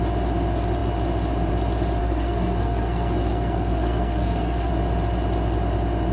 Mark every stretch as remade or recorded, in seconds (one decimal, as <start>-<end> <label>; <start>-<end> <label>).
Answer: 0.0-2.0 recorded; 2.0-4.7 remade; 4.7-6.1 recorded